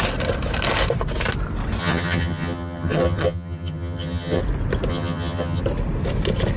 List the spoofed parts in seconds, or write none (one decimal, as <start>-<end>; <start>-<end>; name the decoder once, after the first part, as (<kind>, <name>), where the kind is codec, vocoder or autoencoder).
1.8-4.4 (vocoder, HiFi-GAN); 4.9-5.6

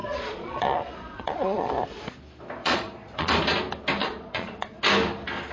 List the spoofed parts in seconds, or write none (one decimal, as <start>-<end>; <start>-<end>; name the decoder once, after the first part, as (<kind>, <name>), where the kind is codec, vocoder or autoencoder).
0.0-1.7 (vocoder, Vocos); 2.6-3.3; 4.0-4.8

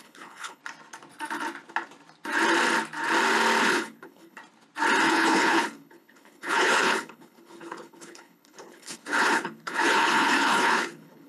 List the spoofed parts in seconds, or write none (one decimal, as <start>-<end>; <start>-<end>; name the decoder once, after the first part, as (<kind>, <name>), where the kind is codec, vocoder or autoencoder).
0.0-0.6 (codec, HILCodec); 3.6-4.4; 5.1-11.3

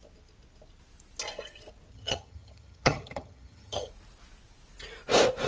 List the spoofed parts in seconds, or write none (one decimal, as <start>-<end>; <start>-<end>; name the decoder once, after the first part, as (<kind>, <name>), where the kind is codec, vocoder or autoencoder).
1.9-3.9 (vocoder, HiFi-GAN)